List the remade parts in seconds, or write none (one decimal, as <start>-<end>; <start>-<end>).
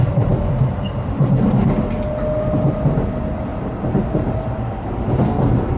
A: none